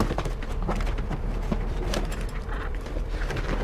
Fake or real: real